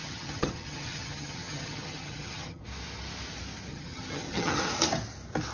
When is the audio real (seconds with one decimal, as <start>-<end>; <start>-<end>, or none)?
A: 2.6-3.7; 4.6-5.5